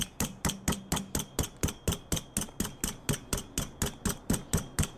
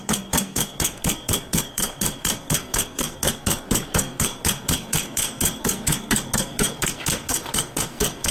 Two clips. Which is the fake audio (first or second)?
second